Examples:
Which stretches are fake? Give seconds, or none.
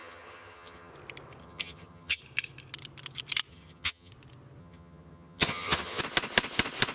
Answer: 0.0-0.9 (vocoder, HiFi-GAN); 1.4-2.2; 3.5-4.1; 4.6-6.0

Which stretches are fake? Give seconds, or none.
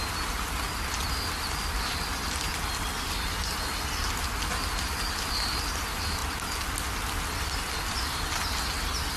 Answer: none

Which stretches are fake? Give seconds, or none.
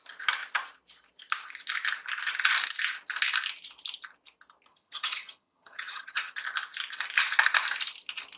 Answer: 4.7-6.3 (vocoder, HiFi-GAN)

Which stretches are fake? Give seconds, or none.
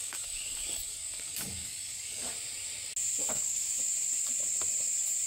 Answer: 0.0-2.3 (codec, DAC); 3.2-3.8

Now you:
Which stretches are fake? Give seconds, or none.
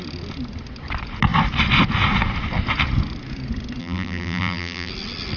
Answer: 3.8-4.9 (vocoder, BigVGAN v2)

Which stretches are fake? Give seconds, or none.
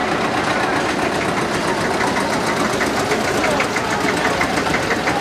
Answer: none